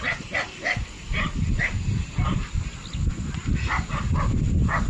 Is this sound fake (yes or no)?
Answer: no